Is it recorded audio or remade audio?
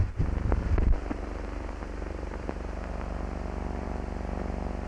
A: remade